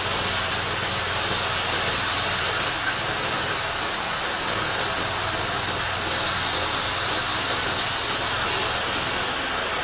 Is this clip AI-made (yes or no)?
no